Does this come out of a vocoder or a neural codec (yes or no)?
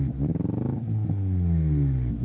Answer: no